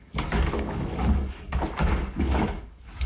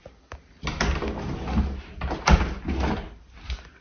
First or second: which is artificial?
first